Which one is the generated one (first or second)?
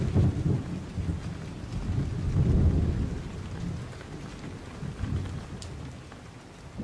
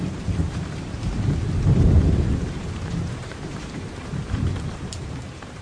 second